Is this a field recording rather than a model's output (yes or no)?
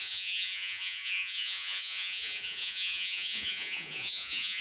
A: no